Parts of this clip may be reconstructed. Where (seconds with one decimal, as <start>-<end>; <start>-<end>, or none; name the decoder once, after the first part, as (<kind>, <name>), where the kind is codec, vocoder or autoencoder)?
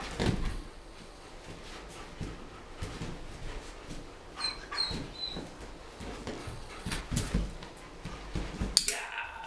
0.5-1.3 (vocoder, WaveNeXt); 6.4-7.0